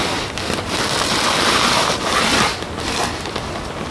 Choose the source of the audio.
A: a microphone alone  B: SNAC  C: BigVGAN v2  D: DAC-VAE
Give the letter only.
A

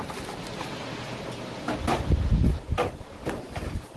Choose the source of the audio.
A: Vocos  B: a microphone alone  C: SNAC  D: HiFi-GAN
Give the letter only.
B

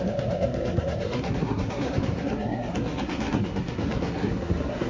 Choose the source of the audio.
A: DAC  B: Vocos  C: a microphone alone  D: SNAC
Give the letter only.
D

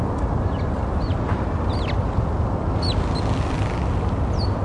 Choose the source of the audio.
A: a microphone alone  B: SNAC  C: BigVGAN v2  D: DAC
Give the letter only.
A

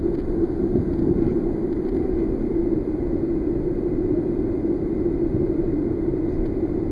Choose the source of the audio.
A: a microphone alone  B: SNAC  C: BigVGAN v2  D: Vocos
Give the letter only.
A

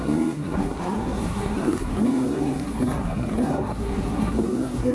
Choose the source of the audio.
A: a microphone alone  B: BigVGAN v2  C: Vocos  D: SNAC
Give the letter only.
D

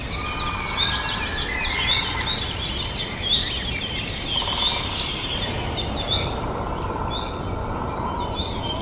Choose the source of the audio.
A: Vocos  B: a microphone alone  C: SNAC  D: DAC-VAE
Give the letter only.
B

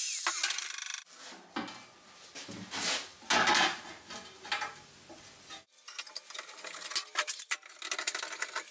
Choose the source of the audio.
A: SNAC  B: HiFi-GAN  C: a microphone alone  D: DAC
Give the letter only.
C